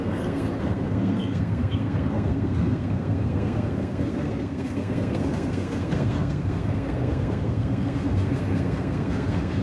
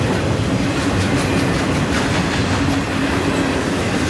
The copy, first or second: first